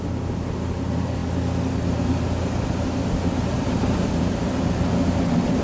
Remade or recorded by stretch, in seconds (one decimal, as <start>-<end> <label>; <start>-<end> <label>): 0.0-5.6 recorded

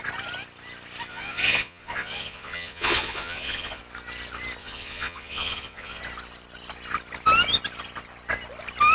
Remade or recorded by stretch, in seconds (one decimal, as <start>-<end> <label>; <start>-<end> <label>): 0.0-1.1 recorded; 1.1-3.8 remade; 3.8-4.6 recorded; 4.6-6.0 remade; 6.0-8.9 recorded

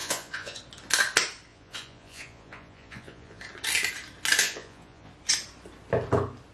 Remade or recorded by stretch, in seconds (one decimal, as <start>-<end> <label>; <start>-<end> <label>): 0.0-0.6 remade; 0.6-1.5 recorded; 1.5-3.4 remade; 3.4-4.4 recorded; 4.4-5.1 remade; 5.1-6.5 recorded

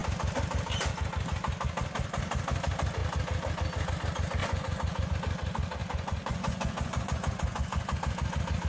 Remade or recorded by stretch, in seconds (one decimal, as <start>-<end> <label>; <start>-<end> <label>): 0.0-4.4 recorded; 4.4-5.1 remade; 5.1-5.8 recorded; 5.8-8.0 remade; 8.0-8.7 recorded

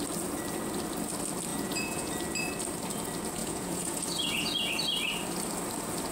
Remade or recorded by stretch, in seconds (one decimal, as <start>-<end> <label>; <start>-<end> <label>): 0.0-1.5 recorded; 1.5-2.1 remade; 2.1-3.4 recorded; 3.4-4.7 remade; 4.7-6.1 recorded